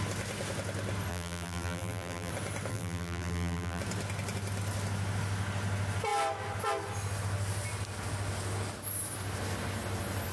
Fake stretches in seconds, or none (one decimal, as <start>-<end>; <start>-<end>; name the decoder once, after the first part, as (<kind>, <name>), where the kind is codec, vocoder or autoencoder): 1.1-2.3 (vocoder, BigVGAN v2); 2.7-3.8